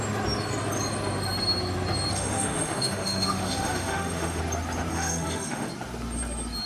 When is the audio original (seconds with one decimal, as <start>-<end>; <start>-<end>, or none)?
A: 0.0-2.1; 4.4-4.9; 5.7-6.7